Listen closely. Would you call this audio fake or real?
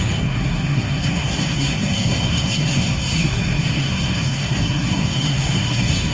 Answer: fake